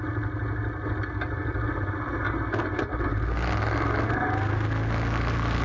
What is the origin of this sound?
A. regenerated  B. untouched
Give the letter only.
B